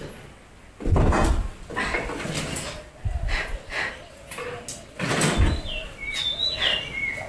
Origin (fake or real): real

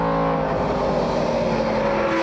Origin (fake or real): real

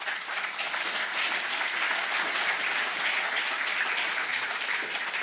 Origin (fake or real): real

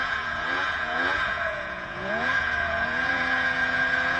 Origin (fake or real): fake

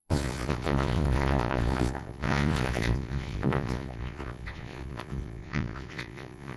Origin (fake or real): fake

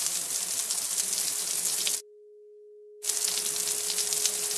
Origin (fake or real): real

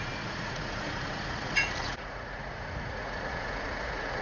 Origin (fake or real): fake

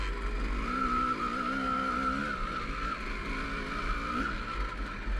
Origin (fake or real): real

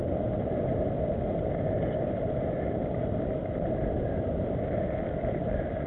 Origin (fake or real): real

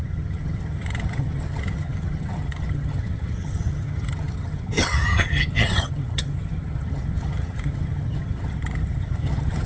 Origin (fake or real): fake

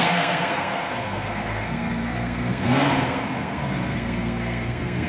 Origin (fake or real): fake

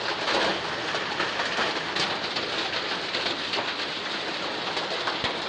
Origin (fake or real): real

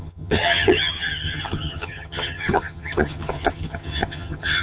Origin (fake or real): fake